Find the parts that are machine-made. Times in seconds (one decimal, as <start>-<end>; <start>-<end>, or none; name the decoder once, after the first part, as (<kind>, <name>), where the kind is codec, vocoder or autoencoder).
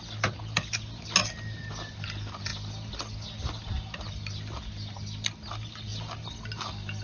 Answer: none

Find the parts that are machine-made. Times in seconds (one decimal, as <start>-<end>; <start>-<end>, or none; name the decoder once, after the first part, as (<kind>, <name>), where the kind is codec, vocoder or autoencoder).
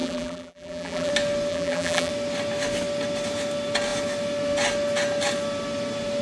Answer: 0.0-1.1 (vocoder, BigVGAN v2); 1.5-2.1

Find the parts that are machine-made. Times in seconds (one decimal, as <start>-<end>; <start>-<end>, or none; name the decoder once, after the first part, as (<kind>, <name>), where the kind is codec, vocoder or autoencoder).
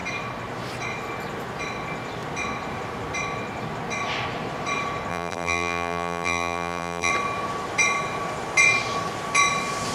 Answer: 5.1-7.1 (vocoder, BigVGAN v2)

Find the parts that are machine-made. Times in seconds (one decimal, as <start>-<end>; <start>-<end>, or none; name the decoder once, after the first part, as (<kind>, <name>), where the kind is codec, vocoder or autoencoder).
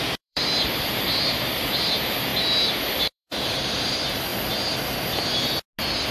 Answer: 0.0-2.3 (vocoder, BigVGAN v2); 2.8-4.3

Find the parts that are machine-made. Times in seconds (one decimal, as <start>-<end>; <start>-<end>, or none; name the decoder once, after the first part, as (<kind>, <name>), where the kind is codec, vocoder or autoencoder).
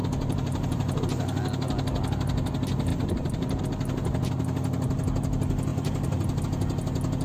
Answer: 0.0-1.0 (vocoder, BigVGAN v2); 2.9-3.6